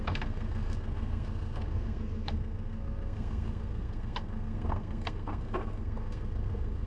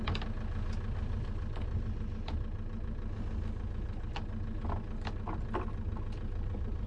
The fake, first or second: first